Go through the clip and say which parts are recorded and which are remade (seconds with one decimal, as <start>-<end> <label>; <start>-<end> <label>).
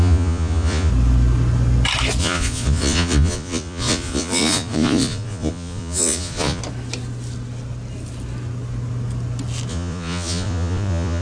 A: 0.0-0.9 remade; 0.9-2.2 recorded; 2.2-6.6 remade; 6.6-9.7 recorded; 9.7-11.2 remade